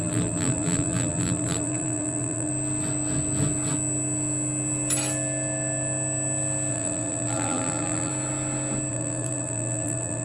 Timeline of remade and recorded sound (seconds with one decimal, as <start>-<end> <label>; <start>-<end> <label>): 0.0-2.5 remade; 2.5-6.7 recorded; 6.7-8.1 remade; 8.1-8.9 recorded; 8.9-10.2 remade